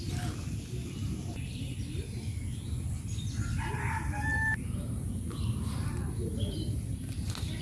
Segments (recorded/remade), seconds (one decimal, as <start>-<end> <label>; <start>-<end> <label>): 0.0-4.3 recorded; 4.3-6.9 remade; 6.9-7.6 recorded